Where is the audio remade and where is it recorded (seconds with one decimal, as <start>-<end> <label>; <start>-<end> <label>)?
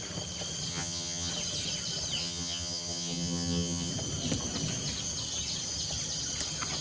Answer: 0.0-0.7 recorded; 0.7-1.3 remade; 1.3-2.2 recorded; 2.2-3.9 remade; 3.9-6.8 recorded